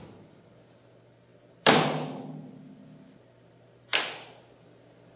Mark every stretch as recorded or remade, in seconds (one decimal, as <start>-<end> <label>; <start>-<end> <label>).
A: 0.0-5.2 recorded